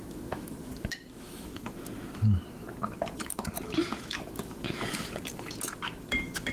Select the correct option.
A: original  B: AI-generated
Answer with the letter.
B